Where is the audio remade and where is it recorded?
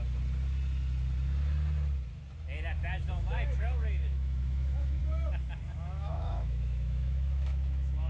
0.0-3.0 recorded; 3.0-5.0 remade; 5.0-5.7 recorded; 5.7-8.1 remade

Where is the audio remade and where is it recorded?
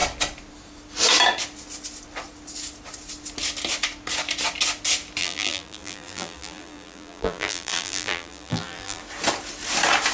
0.0-5.2 recorded; 5.2-9.0 remade; 9.0-10.1 recorded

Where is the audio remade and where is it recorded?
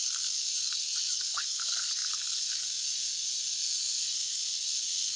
0.0-5.2 remade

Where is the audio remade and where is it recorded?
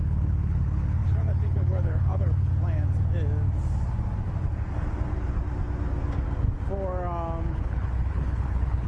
0.0-2.5 remade; 2.5-7.5 recorded; 7.5-8.9 remade